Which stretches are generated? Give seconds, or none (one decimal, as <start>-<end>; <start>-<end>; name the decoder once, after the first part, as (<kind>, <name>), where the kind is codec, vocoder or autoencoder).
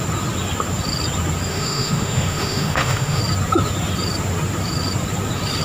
1.5-3.2 (autoencoder, DAC-VAE)